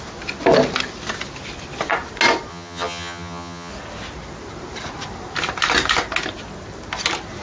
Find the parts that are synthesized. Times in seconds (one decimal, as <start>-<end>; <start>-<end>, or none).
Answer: 2.5-3.7